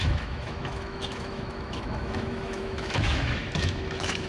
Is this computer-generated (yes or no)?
yes